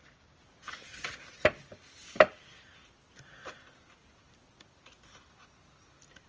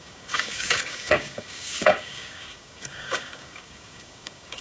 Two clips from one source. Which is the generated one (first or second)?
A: second